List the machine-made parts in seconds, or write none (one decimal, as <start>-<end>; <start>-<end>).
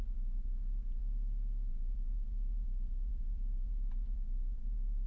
0.0-1.0; 1.7-5.1